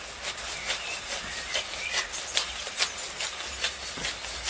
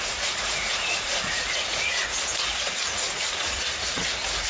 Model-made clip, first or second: second